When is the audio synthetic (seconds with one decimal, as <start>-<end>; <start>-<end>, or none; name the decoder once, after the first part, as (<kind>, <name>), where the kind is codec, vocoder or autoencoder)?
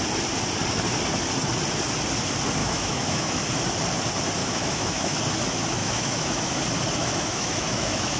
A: 2.6-3.4 (autoencoder, DAC-VAE); 4.4-5.2; 5.8-6.6; 7.0-8.2